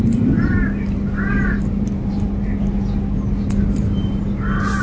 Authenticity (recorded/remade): recorded